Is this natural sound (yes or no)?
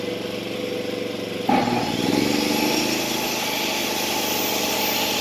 yes